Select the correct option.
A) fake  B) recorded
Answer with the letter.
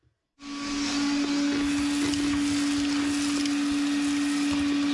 B